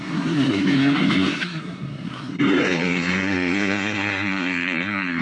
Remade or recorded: remade